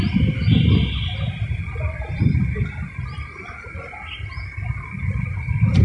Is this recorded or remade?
remade